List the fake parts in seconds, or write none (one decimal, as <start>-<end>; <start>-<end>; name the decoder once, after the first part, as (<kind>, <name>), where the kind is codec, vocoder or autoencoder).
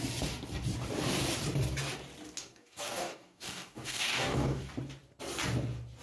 2.4-4.6 (codec, DAC)